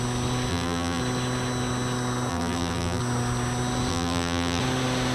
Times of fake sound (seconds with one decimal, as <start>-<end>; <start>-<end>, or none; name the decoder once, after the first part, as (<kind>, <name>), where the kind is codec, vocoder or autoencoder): 0.5-1.0 (vocoder, BigVGAN v2); 2.3-3.0; 3.9-4.6